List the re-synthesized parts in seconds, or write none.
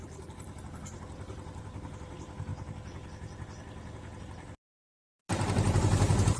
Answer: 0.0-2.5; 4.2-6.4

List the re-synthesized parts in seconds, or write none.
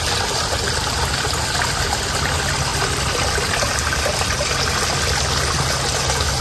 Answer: none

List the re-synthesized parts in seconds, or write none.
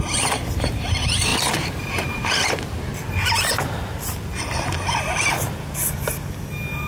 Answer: 0.0-2.9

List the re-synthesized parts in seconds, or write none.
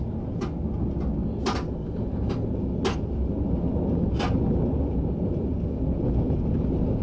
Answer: none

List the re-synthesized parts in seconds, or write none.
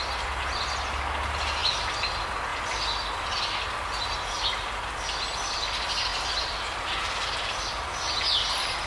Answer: 6.1-7.5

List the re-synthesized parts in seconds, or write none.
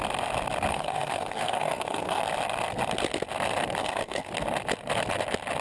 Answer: 0.7-2.2; 3.8-4.3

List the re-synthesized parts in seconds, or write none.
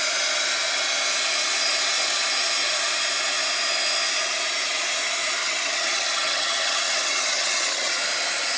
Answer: 5.4-7.9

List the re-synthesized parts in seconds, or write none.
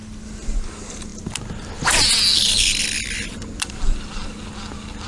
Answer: none